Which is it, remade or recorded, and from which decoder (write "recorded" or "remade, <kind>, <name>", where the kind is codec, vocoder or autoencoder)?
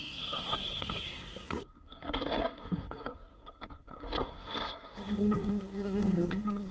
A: remade, codec, SNAC